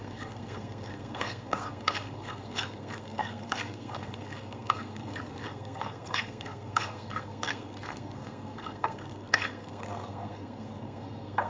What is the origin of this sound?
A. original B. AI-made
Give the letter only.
B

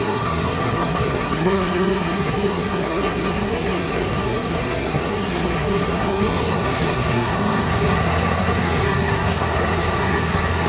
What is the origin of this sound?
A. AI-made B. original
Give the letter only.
A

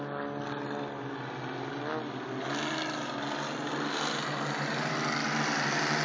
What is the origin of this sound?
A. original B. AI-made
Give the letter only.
A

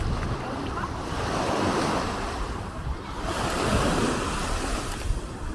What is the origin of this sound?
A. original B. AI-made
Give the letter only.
A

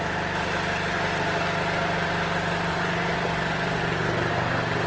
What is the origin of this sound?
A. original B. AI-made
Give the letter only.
A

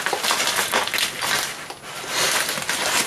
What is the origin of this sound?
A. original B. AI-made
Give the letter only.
A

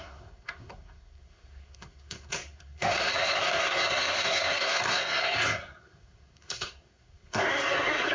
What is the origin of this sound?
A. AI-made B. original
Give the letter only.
A